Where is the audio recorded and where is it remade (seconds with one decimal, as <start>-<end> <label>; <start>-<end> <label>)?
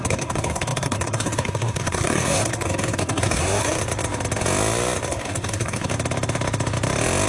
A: 0.0-3.8 remade; 3.8-5.1 recorded; 5.1-5.9 remade; 5.9-7.3 recorded